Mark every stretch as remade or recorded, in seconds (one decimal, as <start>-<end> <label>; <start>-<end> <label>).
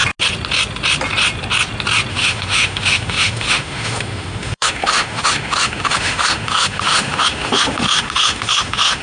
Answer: 0.0-2.1 recorded; 2.1-9.0 remade